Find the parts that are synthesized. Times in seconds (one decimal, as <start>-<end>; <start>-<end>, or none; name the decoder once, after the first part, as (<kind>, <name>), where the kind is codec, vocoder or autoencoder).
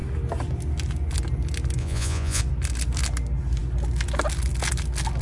1.8-2.4 (vocoder, Vocos)